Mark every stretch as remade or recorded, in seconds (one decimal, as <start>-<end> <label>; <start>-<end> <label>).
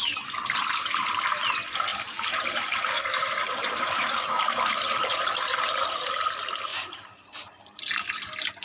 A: 0.0-1.9 recorded; 1.9-6.3 remade; 6.3-6.7 recorded; 6.7-7.8 remade; 7.8-8.6 recorded